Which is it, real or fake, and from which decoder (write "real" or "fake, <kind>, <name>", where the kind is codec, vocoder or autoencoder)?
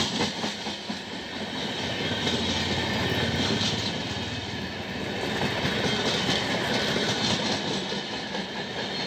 real